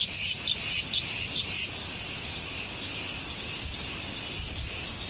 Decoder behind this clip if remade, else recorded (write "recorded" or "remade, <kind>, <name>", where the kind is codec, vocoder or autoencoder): recorded